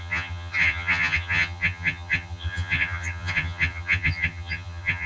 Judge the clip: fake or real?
fake